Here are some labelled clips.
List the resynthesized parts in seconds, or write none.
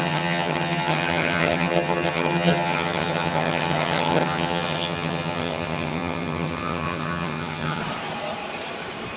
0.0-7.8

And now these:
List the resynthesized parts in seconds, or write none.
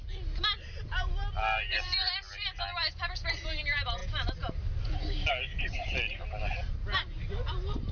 none